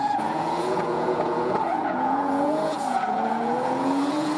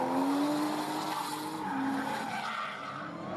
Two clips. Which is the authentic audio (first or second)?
second